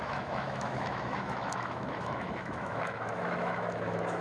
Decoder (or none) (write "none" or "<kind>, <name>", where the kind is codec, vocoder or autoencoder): autoencoder, DAC-VAE